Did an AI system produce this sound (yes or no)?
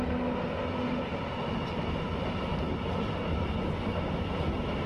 no